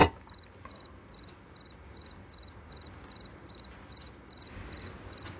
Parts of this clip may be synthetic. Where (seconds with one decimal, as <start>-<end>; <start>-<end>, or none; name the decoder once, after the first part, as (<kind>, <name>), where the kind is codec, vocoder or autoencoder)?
none